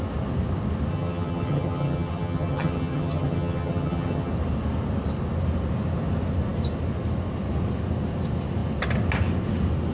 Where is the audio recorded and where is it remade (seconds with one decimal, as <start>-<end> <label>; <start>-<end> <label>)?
0.0-0.9 recorded; 0.9-4.3 remade; 4.3-9.9 recorded